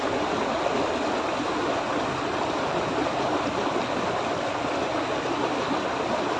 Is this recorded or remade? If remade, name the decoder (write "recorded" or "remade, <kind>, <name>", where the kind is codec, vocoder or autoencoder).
recorded